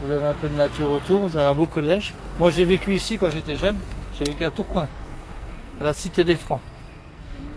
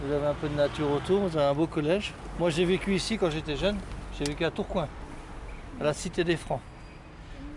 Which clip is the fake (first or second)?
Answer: first